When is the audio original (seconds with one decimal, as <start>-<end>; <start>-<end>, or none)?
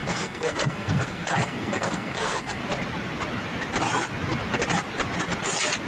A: 2.6-5.9